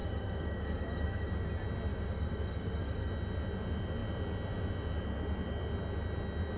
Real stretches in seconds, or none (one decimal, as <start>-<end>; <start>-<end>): 1.3-1.9; 3.1-6.6